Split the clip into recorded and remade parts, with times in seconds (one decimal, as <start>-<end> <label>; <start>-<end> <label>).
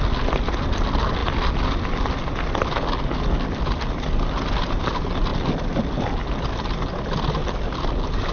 0.0-8.3 recorded